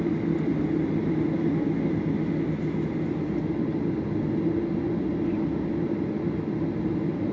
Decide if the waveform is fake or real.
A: real